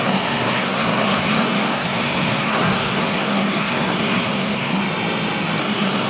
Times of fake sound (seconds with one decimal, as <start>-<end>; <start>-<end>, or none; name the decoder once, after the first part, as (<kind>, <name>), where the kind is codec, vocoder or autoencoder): 0.0-4.8 (codec, SNAC); 5.6-6.1